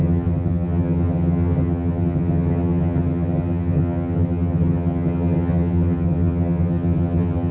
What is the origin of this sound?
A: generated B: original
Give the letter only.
A